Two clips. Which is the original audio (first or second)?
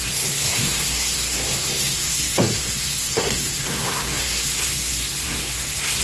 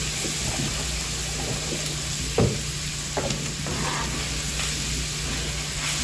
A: second